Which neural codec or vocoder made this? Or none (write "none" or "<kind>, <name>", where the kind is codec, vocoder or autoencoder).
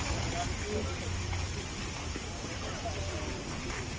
none